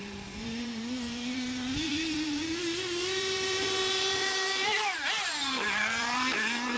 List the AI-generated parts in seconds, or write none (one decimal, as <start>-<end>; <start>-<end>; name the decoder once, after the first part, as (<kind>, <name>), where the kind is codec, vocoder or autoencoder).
0.0-2.4 (vocoder, BigVGAN v2); 3.0-6.8